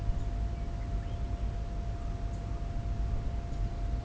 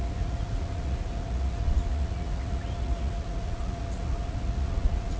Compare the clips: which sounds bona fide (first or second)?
first